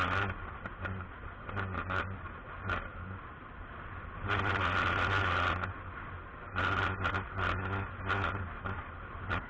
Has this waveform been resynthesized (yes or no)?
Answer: no